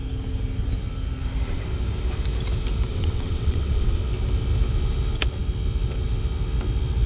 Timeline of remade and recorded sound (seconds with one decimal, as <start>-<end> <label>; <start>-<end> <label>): 0.0-2.9 recorded; 2.9-4.0 remade; 4.0-7.1 recorded